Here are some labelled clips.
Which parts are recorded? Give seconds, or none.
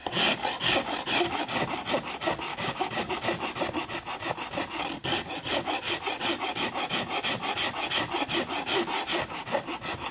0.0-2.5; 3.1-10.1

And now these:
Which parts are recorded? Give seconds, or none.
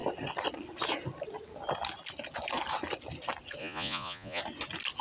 0.0-3.6; 4.4-5.0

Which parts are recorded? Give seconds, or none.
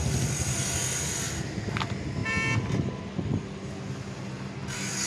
0.0-5.1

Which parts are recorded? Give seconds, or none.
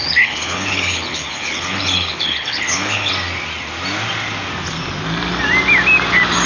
3.1-6.5